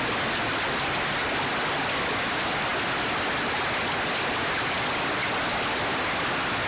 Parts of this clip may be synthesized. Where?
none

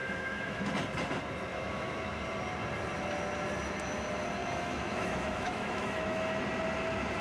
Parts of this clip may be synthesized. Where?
0.0-0.7 (autoencoder, DAC-VAE); 1.5-2.2; 4.4-6.4

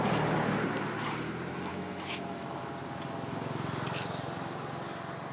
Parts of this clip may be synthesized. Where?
1.7-2.7 (autoencoder, DAC-VAE)

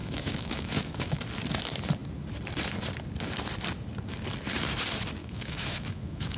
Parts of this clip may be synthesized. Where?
0.0-1.2 (autoencoder, DAC-VAE); 5.2-6.4

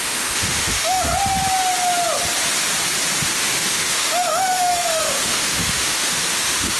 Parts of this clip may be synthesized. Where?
0.0-1.1 (autoencoder, DAC-VAE); 3.2-6.8

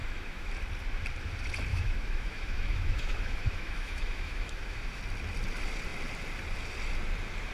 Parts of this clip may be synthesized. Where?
0.0-0.5 (autoencoder, DAC-VAE); 1.7-5.0

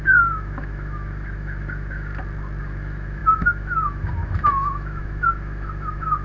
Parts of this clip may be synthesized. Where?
0.0-2.1 (autoencoder, DAC-VAE); 2.6-6.2

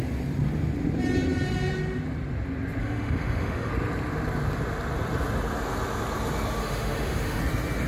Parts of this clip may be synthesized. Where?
2.8-3.7 (autoencoder, DAC-VAE); 6.6-7.4